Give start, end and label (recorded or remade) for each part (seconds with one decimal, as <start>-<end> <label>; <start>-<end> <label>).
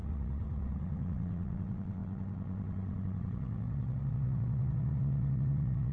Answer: 0.0-5.9 remade